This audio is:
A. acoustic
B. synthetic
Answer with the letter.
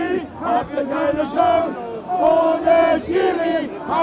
A